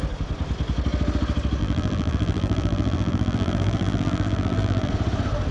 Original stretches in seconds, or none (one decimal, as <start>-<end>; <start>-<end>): 0.0-1.6; 4.9-5.5